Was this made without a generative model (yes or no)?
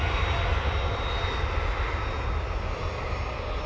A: yes